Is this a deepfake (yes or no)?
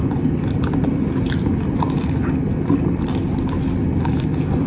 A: no